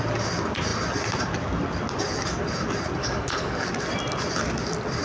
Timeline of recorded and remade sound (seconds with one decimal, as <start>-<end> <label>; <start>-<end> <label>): 0.0-3.0 recorded; 3.0-3.7 remade; 3.7-5.0 recorded